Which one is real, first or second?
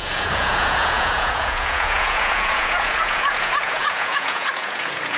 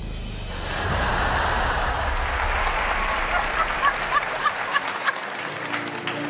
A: second